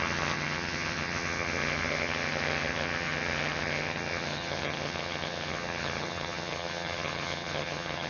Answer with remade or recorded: remade